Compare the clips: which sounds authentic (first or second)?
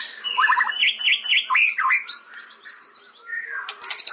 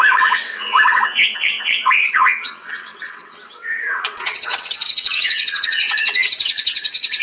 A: first